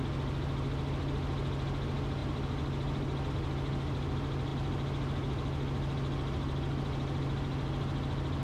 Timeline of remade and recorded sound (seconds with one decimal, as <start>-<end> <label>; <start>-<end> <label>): 0.0-8.4 recorded